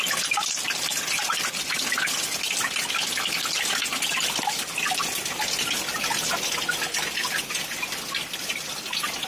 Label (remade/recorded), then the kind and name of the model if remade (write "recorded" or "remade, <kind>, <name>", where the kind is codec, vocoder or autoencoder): recorded